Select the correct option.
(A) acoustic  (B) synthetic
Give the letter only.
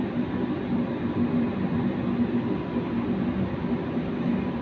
A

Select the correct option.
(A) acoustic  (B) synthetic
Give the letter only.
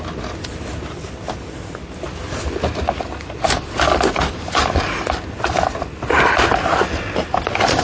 A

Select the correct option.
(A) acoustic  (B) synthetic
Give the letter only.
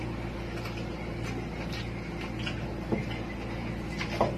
A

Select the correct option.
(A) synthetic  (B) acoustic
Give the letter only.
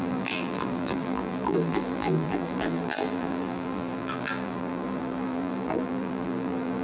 A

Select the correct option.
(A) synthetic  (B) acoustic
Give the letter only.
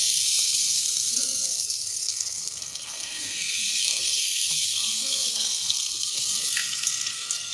A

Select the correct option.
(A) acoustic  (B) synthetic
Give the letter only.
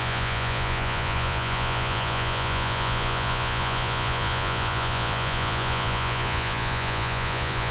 B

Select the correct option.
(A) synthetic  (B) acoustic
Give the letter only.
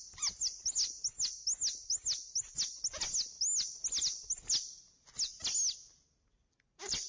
B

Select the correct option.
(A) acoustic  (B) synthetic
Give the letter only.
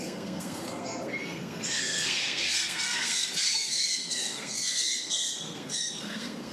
B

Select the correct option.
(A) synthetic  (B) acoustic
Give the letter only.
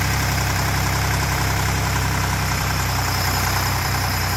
A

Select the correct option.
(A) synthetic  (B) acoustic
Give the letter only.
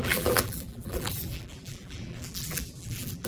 A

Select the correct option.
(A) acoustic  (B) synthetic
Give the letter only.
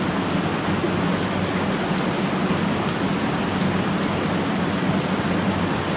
A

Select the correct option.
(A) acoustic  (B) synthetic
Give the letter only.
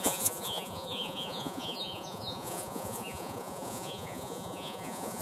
B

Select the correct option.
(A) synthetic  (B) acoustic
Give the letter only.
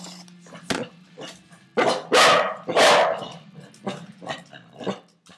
B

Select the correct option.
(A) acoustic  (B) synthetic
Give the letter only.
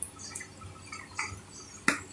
A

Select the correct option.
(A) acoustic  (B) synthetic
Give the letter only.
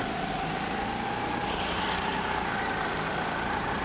A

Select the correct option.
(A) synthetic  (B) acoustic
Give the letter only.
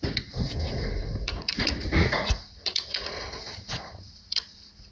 A